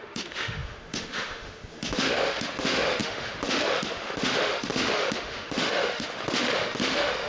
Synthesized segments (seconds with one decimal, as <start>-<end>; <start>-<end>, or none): 0.0-7.3